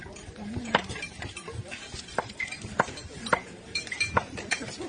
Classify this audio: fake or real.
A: fake